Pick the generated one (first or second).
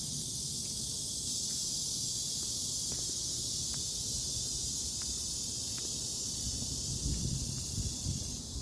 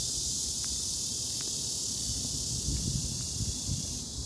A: second